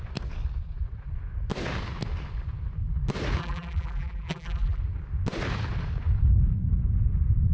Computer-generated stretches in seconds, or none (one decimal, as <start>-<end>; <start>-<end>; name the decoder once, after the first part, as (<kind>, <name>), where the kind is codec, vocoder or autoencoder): 3.4-4.8 (vocoder, BigVGAN v2)